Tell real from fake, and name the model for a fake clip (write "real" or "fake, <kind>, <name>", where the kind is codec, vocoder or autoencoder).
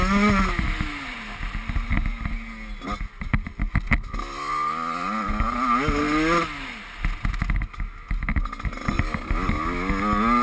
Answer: real